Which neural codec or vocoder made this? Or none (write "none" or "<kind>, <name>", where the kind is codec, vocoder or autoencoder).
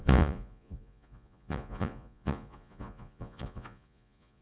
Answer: vocoder, Vocos